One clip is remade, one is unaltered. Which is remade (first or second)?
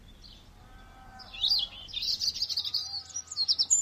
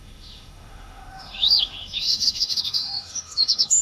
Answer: second